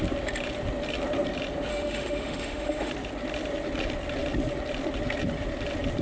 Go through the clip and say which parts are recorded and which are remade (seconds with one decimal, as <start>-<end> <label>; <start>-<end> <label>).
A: 0.0-1.7 recorded; 1.7-2.9 remade; 2.9-6.0 recorded